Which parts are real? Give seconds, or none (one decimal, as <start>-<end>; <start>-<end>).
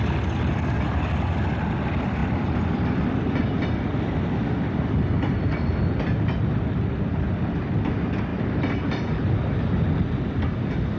0.0-11.0